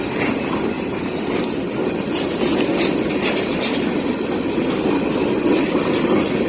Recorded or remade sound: recorded